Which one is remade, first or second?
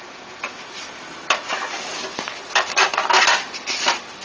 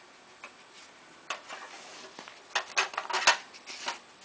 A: first